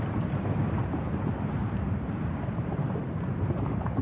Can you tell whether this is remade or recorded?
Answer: remade